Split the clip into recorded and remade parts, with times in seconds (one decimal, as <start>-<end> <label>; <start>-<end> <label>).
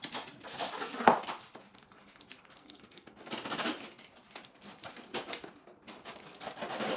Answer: 0.0-2.6 recorded; 2.6-3.3 remade; 3.3-7.0 recorded